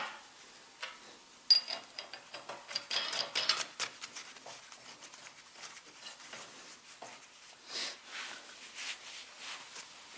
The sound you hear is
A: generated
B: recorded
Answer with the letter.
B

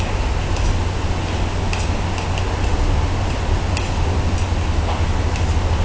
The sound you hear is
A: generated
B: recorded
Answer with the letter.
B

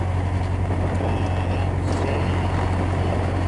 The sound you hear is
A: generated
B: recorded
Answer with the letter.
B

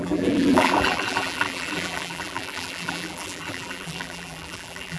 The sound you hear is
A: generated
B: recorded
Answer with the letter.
A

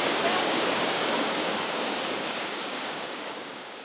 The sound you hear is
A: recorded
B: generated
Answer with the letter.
B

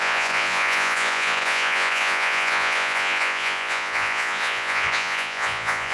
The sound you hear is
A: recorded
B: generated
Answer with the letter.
B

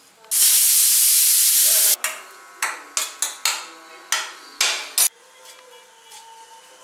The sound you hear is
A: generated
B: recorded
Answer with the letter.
B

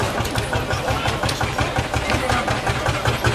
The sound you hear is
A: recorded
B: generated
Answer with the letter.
A